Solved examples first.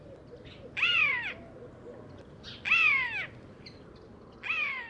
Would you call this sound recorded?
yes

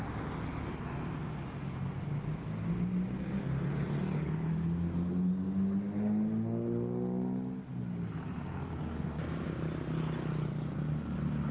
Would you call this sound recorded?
yes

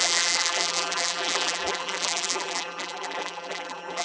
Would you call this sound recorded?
no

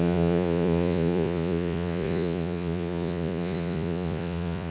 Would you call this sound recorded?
no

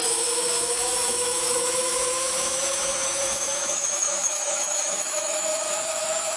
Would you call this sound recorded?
no